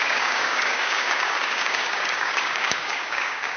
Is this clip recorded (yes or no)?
no